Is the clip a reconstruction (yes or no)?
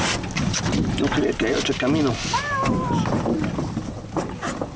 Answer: no